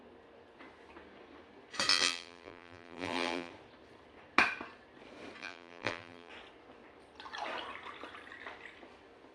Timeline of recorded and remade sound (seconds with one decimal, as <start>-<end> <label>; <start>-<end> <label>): 0.0-1.9 recorded; 1.9-3.5 remade; 3.5-5.4 recorded; 5.4-6.3 remade; 6.3-9.3 recorded